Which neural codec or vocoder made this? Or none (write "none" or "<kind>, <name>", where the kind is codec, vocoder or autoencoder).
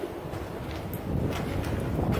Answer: none